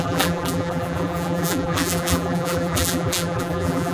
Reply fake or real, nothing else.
fake